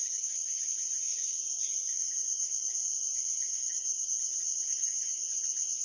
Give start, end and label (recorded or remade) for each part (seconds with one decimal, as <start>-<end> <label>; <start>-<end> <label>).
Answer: 0.0-0.6 remade; 0.6-1.1 recorded; 1.1-2.1 remade; 2.1-3.5 recorded; 3.5-4.2 remade; 4.2-4.7 recorded; 4.7-5.3 remade; 5.3-5.8 recorded